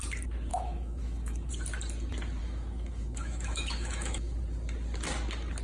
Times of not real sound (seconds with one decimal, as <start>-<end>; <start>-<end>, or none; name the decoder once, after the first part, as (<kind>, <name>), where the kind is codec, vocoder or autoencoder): 0.5-1.5 (autoencoder, DAC-VAE); 2.4-4.4